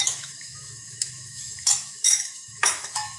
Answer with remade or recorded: remade